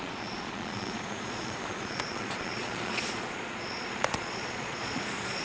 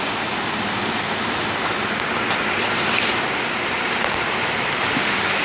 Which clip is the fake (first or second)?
first